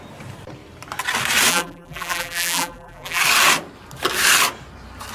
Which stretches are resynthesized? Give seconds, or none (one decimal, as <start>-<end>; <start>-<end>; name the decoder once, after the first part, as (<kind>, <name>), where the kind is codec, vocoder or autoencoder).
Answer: 1.5-3.2 (vocoder, BigVGAN v2)

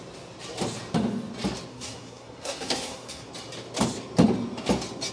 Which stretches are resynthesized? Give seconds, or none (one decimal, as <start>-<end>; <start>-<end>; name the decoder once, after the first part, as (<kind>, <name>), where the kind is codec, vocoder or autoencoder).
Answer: 1.7-3.3 (codec, SNAC)

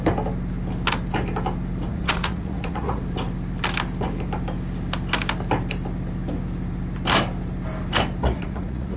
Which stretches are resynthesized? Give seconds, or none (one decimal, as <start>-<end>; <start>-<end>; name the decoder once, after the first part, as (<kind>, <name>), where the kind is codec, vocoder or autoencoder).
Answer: 1.9-3.0 (vocoder, Vocos); 8.2-9.0